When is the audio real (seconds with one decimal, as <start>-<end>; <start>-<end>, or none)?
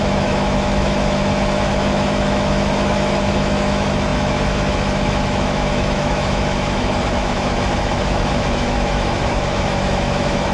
none